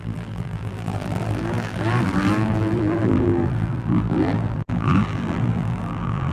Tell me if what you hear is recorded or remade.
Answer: remade